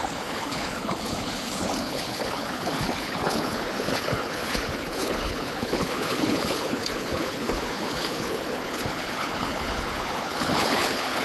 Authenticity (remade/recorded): remade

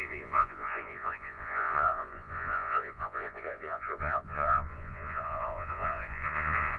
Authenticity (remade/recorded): remade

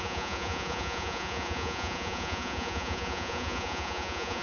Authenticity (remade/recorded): remade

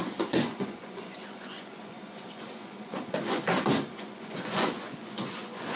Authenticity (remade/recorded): remade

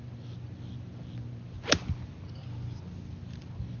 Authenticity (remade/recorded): recorded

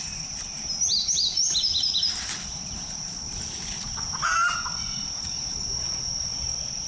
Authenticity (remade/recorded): recorded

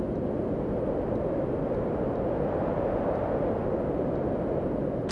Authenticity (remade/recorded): recorded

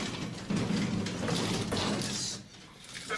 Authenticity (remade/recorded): recorded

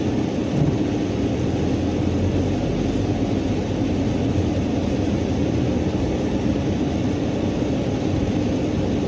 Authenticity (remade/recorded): recorded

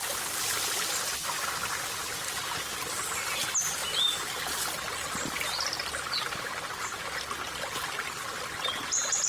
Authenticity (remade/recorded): recorded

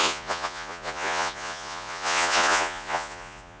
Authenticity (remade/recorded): remade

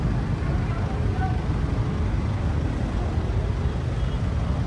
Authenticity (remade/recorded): recorded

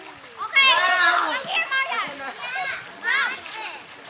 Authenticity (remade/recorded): recorded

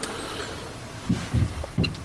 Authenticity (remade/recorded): recorded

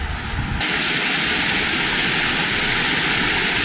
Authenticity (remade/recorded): recorded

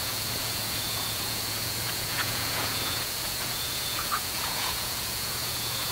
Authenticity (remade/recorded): remade